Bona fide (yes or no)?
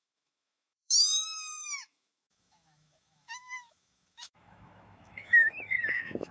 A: no